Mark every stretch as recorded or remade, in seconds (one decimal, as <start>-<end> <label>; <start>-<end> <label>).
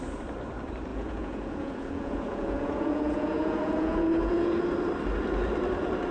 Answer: 0.0-0.9 recorded; 0.9-4.6 remade; 4.6-6.1 recorded